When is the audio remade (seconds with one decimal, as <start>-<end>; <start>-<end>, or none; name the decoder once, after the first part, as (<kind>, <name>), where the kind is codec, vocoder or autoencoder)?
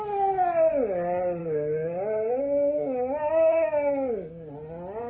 1.4-4.5 (codec, DAC)